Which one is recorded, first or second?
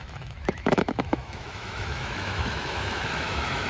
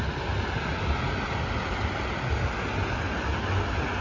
second